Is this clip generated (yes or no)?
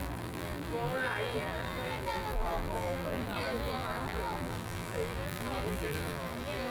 yes